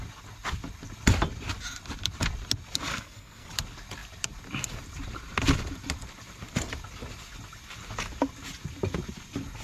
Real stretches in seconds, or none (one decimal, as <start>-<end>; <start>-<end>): 0.0-2.9; 3.5-9.6